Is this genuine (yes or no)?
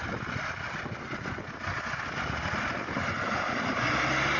yes